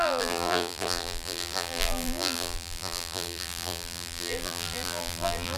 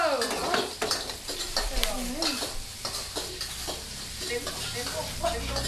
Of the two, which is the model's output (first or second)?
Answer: first